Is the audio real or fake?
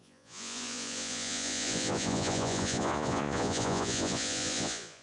fake